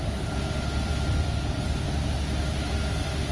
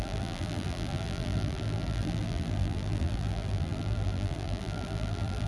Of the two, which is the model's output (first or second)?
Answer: second